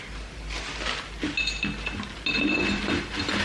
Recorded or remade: recorded